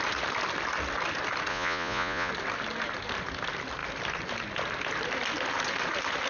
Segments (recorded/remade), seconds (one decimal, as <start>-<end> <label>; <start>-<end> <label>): 0.0-1.5 recorded; 1.5-2.3 remade; 2.3-6.3 recorded